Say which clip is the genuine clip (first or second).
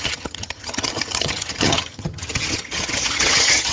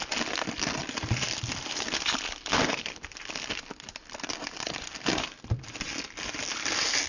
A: second